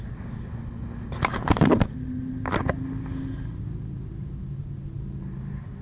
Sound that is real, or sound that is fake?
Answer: real